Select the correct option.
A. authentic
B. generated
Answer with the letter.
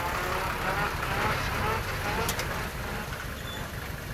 A